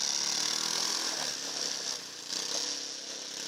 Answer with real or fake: real